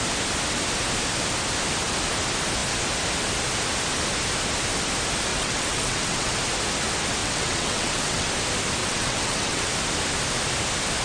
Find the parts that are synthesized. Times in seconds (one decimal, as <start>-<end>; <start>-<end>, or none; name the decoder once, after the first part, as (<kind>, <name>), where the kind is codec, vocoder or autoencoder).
5.3-6.3 (vocoder, WaveNeXt); 7.2-8.3; 8.8-9.7